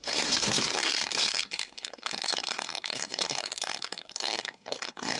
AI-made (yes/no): yes